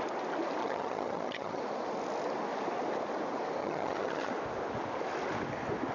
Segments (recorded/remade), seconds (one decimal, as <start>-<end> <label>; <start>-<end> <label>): 0.0-0.6 recorded; 0.6-1.6 remade; 1.6-3.6 recorded; 3.6-4.3 remade; 4.3-5.9 recorded